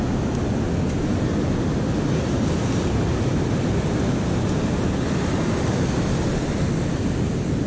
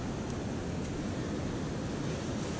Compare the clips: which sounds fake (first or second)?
second